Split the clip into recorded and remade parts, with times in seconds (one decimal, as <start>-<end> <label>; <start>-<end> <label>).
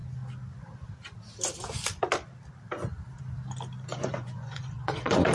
0.0-3.9 recorded; 3.9-5.3 remade